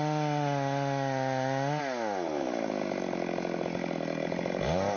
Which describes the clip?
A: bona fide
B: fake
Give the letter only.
A